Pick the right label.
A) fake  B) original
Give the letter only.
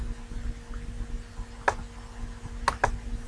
B